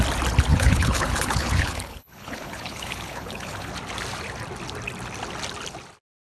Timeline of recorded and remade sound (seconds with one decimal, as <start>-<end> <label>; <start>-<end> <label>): 0.0-0.5 recorded; 0.5-3.7 remade; 3.7-6.3 recorded